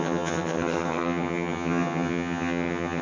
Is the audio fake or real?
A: fake